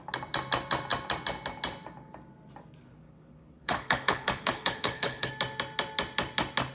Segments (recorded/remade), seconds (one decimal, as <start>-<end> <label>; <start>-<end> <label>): 0.0-2.8 recorded; 2.8-5.3 remade; 5.3-6.7 recorded